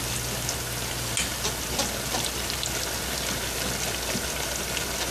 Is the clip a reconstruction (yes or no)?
no